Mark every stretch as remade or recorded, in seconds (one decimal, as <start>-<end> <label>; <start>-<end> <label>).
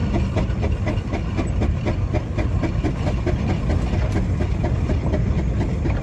0.0-6.0 recorded